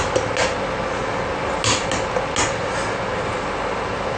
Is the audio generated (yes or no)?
no